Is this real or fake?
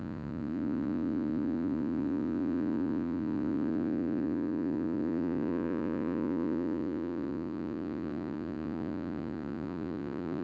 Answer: fake